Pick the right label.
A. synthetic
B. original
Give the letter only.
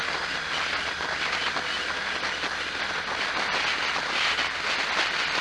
B